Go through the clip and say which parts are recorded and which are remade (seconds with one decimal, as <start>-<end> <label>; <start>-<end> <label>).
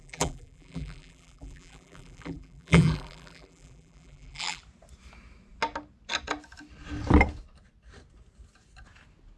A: 0.0-4.6 remade; 4.6-9.4 recorded